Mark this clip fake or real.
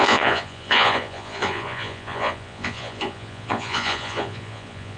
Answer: fake